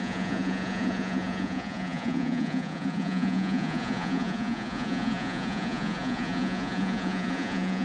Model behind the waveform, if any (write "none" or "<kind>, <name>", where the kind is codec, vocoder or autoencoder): vocoder, Vocos